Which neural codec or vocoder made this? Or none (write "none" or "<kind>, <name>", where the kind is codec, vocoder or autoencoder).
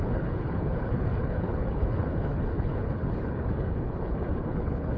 codec, HILCodec